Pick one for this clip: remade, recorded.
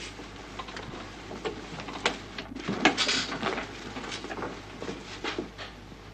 recorded